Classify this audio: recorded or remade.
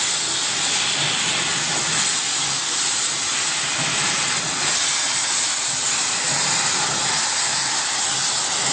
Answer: recorded